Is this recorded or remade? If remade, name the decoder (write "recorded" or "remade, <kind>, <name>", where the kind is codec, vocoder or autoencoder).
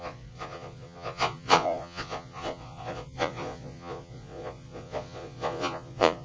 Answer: remade, vocoder, Vocos